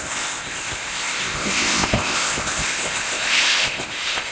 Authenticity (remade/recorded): remade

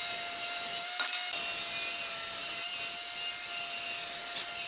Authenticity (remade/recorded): recorded